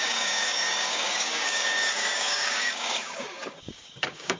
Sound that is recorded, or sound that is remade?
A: remade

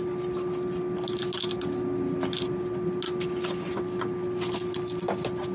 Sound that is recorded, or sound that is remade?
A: recorded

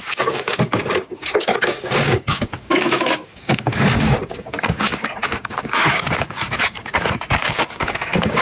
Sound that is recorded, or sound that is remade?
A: remade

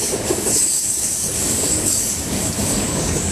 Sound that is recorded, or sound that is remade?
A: remade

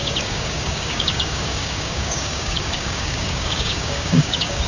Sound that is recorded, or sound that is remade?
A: remade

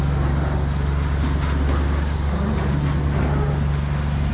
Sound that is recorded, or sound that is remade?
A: recorded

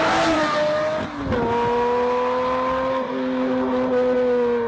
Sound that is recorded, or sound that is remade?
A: recorded